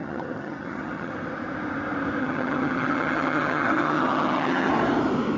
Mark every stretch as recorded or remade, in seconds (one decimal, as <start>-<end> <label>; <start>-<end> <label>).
0.0-1.1 remade; 1.1-2.2 recorded; 2.2-4.7 remade; 4.7-5.4 recorded